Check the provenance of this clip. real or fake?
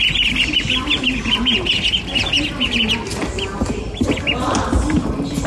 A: real